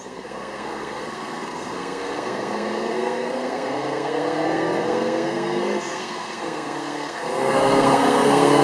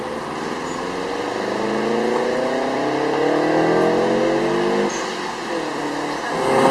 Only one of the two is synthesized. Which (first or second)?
first